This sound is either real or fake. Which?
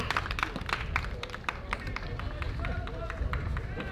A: real